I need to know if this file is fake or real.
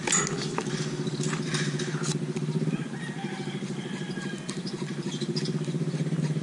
real